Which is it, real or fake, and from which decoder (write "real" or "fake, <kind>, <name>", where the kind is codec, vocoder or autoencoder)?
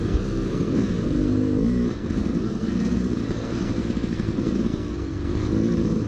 fake, codec, SNAC